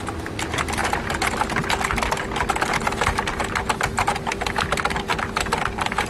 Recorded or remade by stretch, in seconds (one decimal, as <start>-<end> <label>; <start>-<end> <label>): 0.0-6.1 recorded